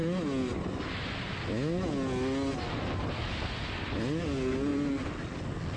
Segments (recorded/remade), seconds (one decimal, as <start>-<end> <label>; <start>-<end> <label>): 0.0-5.8 recorded